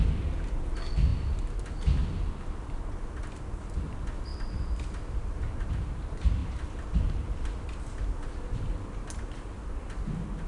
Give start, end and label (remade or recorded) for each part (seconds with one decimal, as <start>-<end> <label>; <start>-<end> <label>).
0.0-10.5 recorded